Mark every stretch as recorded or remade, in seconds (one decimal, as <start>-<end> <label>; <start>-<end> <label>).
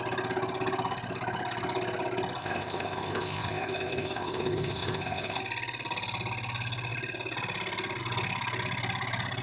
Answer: 0.0-2.4 recorded; 2.4-5.4 remade; 5.4-9.4 recorded